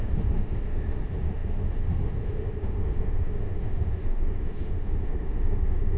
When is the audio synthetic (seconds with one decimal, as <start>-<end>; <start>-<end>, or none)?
0.0-6.0